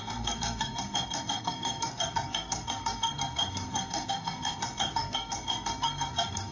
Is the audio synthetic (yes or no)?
yes